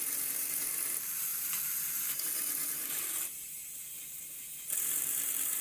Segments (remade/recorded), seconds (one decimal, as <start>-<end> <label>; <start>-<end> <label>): 0.0-3.6 remade; 3.6-4.8 recorded; 4.8-5.6 remade